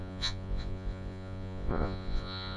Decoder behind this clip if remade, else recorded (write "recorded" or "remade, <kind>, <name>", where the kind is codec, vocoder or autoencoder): remade, vocoder, Vocos